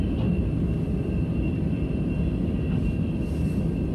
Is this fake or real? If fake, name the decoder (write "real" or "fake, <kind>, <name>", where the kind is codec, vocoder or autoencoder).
real